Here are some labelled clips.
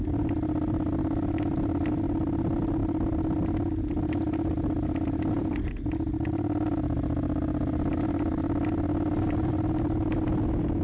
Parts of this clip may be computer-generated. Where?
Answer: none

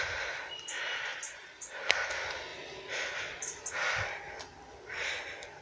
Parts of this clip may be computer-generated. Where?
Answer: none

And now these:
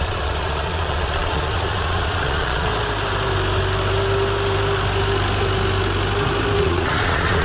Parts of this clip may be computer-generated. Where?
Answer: 0.0-2.7 (vocoder, Vocos); 6.6-7.4